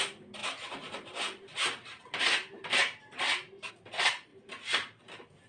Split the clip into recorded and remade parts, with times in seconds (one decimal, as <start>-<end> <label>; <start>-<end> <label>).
0.0-0.4 recorded; 0.4-3.7 remade; 3.7-4.3 recorded; 4.3-5.0 remade; 5.0-5.5 recorded